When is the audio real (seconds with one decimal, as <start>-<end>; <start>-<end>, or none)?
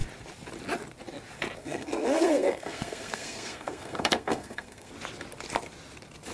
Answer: 0.0-1.6; 4.9-6.3